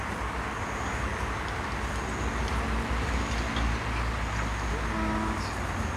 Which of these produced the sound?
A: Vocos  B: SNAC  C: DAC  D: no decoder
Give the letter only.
D